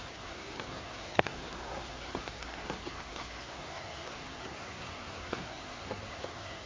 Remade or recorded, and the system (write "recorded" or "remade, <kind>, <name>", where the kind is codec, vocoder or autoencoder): remade, codec, SNAC